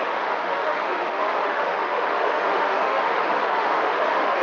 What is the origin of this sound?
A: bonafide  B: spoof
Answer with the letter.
B